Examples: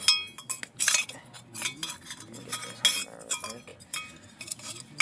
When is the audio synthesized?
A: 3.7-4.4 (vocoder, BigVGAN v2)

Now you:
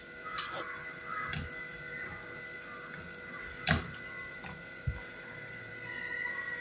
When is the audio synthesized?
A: 1.7-5.7 (vocoder, BigVGAN v2)

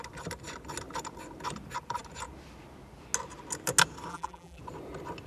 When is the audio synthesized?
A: 4.1-4.6 (vocoder, BigVGAN v2)

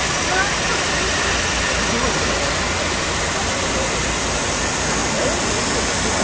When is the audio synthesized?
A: none

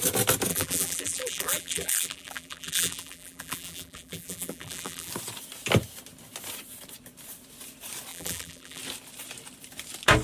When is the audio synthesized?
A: 0.5-5.1 (vocoder, BigVGAN v2); 8.1-8.8

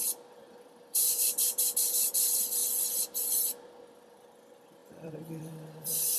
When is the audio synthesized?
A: 0.0-2.6 (vocoder, BigVGAN v2); 3.9-6.2

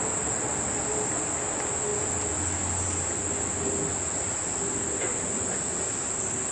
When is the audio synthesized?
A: none

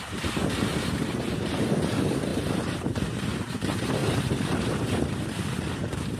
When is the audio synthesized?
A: 0.7-1.5 (vocoder, BigVGAN v2); 2.3-3.3; 4.0-5.1